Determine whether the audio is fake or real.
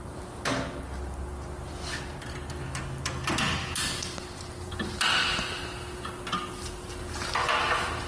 real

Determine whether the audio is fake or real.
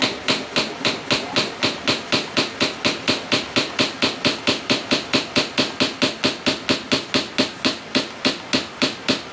real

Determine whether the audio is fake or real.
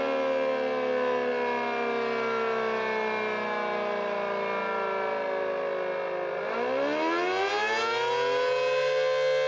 real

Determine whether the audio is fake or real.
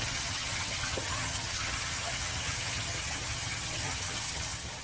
fake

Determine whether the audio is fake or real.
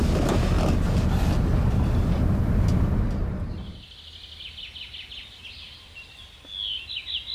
real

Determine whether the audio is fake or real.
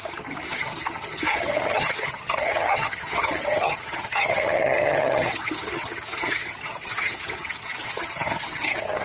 fake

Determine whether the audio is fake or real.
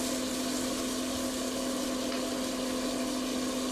real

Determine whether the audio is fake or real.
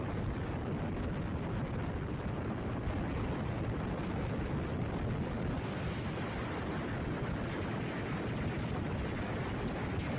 real